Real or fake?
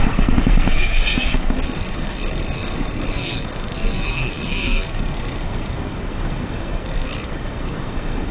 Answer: fake